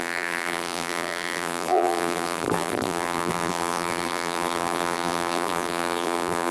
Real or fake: fake